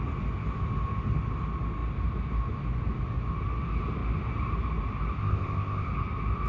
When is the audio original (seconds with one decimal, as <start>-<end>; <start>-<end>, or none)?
0.0-5.2; 5.9-6.5